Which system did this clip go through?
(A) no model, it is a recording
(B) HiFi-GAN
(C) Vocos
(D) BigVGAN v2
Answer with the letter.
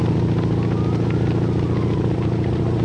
A